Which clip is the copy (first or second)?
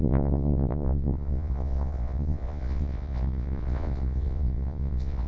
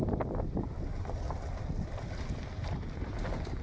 first